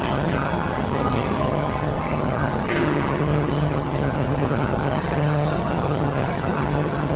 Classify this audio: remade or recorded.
remade